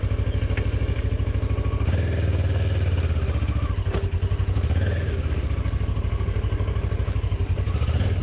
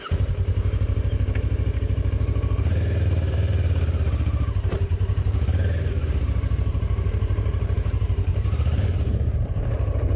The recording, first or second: first